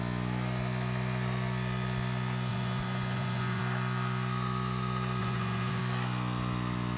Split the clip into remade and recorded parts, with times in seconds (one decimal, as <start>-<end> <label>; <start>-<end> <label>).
0.0-2.5 recorded; 2.5-3.6 remade; 3.6-5.2 recorded; 5.2-5.8 remade; 5.8-7.0 recorded